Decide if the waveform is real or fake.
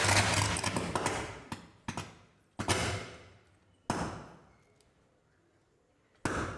real